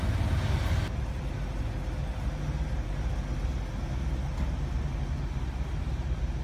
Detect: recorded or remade recorded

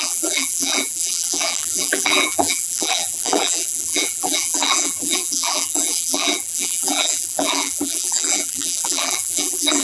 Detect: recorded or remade remade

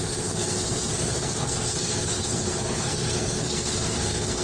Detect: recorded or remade remade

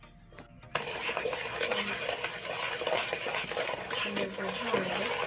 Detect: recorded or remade recorded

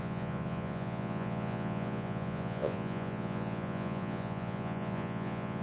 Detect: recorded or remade remade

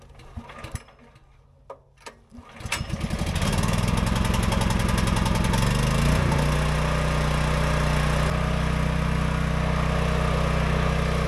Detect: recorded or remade recorded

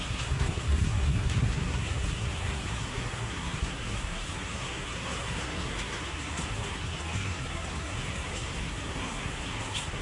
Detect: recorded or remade remade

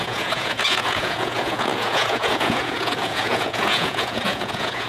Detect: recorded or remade remade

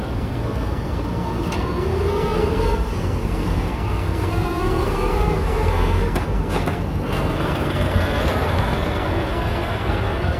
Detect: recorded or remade remade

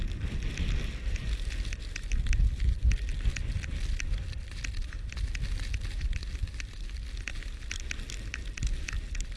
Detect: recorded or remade recorded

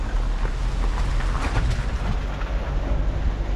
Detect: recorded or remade recorded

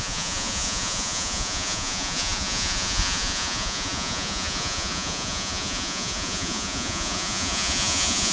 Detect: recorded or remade remade